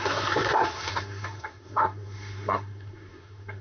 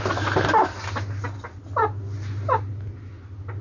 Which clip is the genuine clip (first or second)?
second